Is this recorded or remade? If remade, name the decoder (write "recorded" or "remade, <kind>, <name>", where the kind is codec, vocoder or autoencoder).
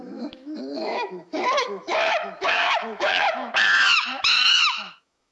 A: remade, autoencoder, DAC-VAE